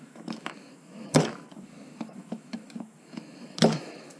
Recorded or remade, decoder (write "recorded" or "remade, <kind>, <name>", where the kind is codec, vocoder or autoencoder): remade, autoencoder, DAC-VAE